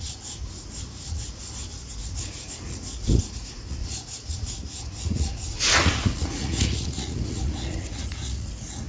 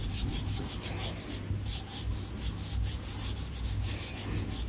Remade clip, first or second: first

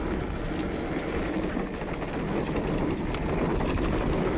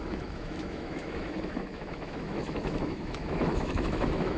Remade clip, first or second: second